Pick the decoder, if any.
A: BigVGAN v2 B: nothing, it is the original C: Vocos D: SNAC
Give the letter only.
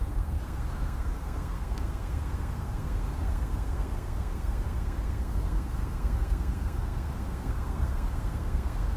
D